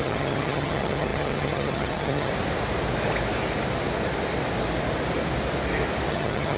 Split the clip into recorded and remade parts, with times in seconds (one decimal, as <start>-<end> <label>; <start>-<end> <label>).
0.0-2.3 remade; 2.3-6.1 recorded; 6.1-6.6 remade